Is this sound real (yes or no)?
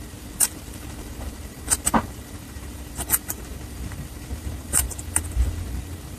no